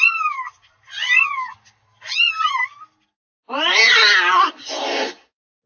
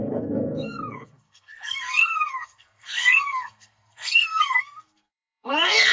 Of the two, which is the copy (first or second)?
second